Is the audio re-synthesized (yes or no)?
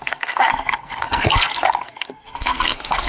yes